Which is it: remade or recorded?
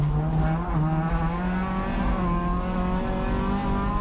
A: recorded